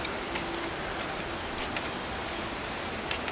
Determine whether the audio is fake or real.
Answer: real